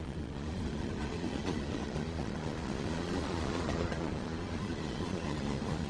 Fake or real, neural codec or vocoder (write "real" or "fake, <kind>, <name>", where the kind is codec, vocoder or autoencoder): fake, vocoder, Vocos